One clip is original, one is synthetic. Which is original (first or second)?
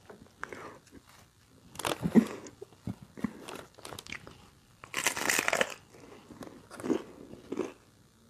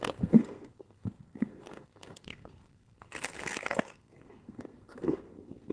first